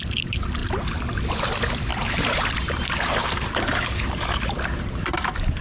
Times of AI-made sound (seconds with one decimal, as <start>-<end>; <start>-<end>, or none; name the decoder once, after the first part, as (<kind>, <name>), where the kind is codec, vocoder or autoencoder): 1.9-5.6 (vocoder, BigVGAN v2)